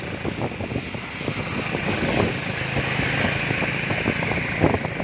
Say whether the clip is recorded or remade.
recorded